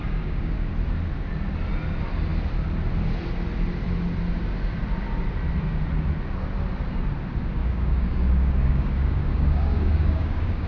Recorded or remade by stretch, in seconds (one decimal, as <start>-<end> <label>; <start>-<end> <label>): 0.0-0.7 remade; 0.7-7.6 recorded; 7.6-10.7 remade